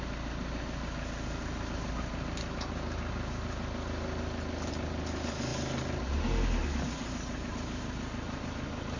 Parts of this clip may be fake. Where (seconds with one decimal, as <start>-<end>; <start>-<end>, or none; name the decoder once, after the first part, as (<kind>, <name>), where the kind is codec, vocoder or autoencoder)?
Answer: none